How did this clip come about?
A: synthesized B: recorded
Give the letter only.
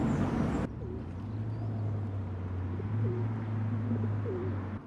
B